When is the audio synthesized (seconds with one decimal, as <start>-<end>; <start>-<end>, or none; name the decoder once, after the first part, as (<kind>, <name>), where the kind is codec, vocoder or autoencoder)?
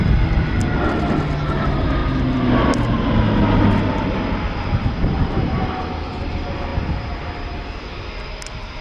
none